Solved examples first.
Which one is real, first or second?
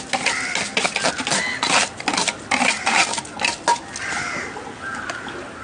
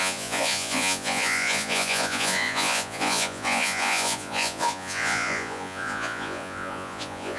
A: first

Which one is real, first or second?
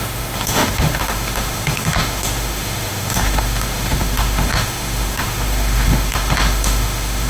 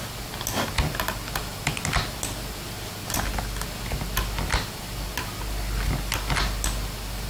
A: second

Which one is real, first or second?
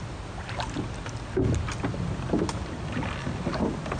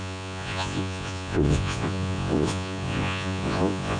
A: first